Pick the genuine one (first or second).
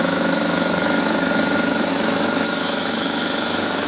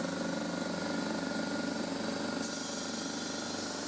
second